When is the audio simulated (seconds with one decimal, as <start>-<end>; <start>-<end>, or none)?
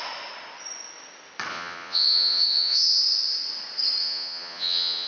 1.5-3.0; 4.0-5.1